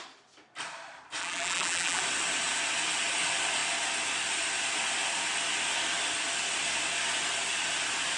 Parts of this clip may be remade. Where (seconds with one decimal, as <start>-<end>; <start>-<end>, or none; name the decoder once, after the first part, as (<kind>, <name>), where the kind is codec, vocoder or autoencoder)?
1.2-2.0 (vocoder, BigVGAN v2)